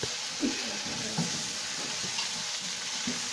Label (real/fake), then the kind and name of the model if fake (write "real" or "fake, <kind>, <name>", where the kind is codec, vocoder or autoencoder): real